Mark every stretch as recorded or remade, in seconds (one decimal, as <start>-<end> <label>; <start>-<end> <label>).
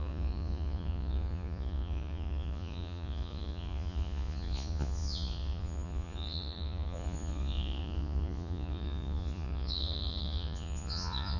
0.0-11.4 remade